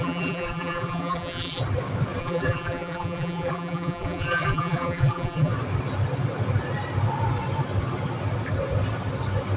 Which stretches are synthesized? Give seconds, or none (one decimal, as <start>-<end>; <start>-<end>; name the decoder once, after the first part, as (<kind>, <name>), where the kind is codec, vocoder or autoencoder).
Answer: 0.0-1.6 (vocoder, BigVGAN v2); 2.2-5.5